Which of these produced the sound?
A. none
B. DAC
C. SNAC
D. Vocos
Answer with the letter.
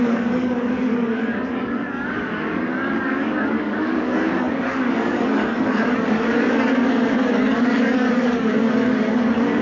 B